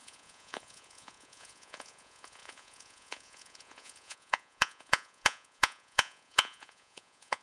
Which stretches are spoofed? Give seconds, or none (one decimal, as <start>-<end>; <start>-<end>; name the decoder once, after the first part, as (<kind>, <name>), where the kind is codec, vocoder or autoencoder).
0.0-7.4 (vocoder, Vocos)